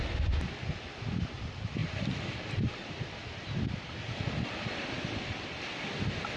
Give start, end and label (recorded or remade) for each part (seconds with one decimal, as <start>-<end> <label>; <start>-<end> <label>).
0.0-1.8 recorded; 1.8-5.6 remade; 5.6-6.4 recorded

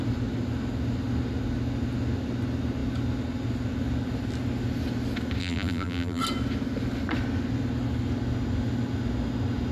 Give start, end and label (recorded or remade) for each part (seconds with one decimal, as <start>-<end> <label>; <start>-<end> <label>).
0.0-5.4 recorded; 5.4-6.2 remade; 6.2-9.7 recorded